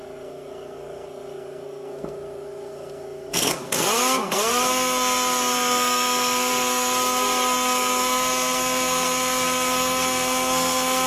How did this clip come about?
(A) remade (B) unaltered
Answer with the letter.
A